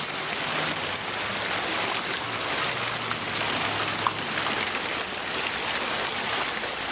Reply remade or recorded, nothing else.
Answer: recorded